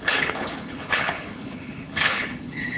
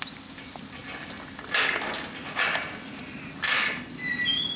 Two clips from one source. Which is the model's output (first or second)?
first